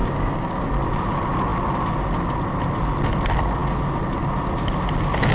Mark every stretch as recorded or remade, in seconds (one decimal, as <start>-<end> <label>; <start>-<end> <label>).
0.0-0.7 remade; 0.7-5.3 recorded